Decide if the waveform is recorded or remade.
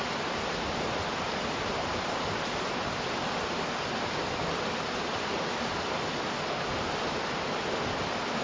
remade